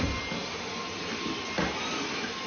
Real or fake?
real